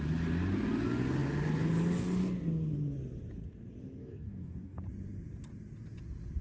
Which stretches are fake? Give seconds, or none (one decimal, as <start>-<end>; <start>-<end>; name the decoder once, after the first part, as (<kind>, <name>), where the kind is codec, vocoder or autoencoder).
4.0-4.8 (codec, DAC)